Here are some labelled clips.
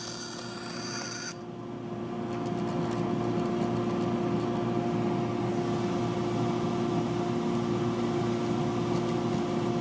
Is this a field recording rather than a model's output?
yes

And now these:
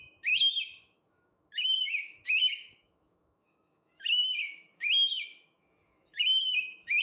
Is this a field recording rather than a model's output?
no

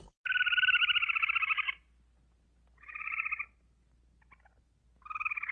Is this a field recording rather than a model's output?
yes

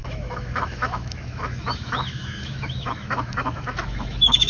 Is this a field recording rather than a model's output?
no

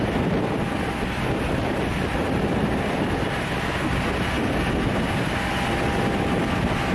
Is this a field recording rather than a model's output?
yes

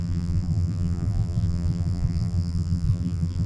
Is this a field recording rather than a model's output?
no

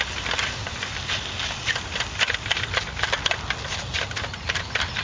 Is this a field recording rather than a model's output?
yes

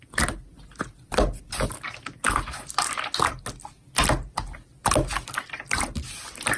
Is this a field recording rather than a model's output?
yes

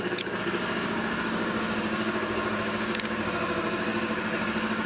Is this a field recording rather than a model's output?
no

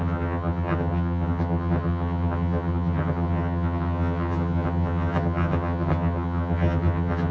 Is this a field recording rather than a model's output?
no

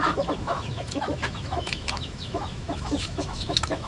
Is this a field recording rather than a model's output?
no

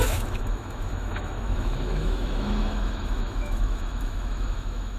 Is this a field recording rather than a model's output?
no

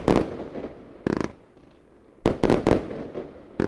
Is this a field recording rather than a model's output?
yes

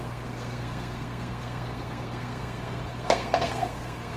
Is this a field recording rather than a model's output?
no